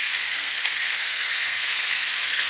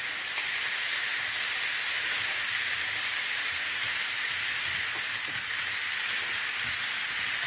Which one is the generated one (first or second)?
first